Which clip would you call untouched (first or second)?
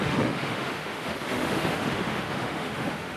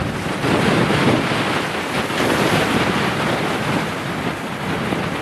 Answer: second